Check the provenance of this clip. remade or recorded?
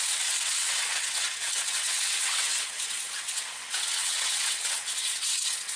remade